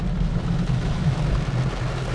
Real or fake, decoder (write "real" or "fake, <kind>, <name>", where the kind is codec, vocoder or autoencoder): real